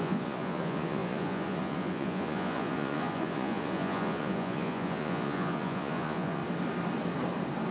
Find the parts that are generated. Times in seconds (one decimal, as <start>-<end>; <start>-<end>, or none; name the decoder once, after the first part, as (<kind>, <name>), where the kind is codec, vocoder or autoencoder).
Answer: 0.0-6.4 (vocoder, Vocos)